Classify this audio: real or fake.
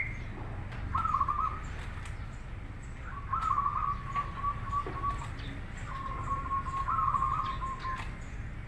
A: real